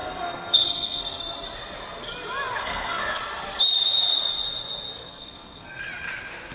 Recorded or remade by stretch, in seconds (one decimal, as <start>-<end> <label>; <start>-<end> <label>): 0.0-1.2 remade; 1.2-2.6 recorded; 2.6-3.2 remade; 3.2-5.1 recorded; 5.1-5.8 remade; 5.8-6.5 recorded